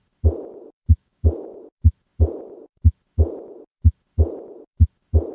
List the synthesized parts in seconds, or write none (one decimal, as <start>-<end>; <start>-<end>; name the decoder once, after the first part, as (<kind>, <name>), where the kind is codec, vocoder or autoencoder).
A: 1.0-1.6 (codec, DAC)